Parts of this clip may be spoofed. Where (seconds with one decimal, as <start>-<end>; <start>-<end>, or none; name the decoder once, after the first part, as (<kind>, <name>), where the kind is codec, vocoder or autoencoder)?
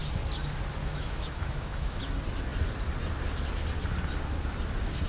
0.8-2.0 (autoencoder, DAC-VAE)